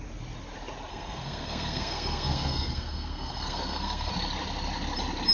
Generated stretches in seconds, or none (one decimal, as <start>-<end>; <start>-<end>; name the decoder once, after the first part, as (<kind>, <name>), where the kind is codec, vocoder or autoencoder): 0.9-4.1 (codec, SNAC)